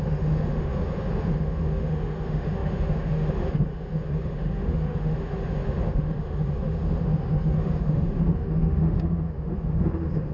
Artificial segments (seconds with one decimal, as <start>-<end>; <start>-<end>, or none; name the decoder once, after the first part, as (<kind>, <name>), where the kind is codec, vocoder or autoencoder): 0.0-10.3 (autoencoder, DAC-VAE)